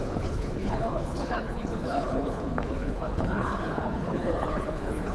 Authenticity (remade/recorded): remade